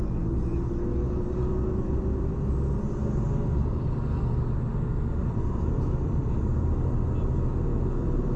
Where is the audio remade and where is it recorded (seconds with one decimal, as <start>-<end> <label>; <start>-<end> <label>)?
0.0-5.2 recorded; 5.2-7.1 remade; 7.1-8.4 recorded